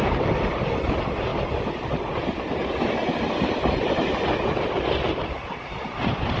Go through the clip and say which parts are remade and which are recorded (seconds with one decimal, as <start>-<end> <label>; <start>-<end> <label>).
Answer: 0.0-6.4 recorded